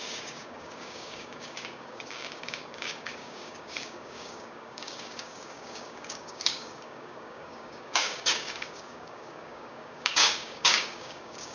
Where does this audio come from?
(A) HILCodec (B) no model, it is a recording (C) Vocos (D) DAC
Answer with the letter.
D